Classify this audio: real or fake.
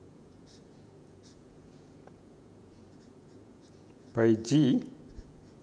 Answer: fake